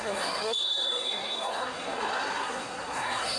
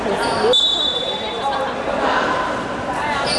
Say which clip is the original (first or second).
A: second